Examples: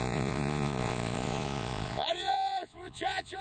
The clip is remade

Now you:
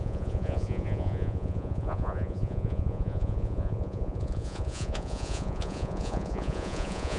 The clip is remade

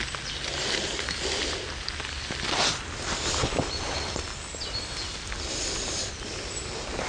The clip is recorded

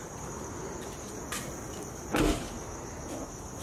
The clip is recorded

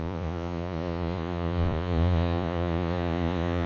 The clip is remade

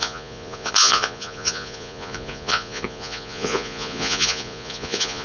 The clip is remade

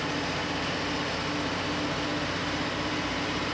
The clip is recorded